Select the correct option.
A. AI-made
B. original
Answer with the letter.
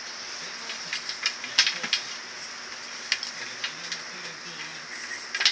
B